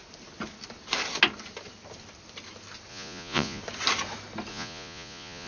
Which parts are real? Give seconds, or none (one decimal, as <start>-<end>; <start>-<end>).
0.0-2.9; 3.6-4.5